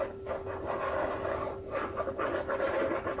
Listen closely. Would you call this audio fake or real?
real